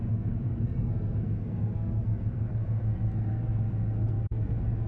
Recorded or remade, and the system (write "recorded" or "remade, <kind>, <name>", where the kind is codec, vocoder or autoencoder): remade, codec, SNAC